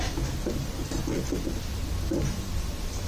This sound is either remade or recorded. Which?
recorded